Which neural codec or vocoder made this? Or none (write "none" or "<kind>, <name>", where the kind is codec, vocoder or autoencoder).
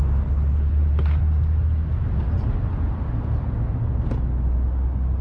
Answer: none